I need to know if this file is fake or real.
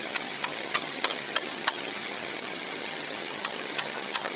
fake